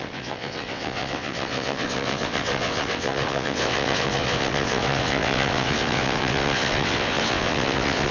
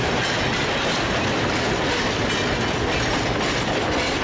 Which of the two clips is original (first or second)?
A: second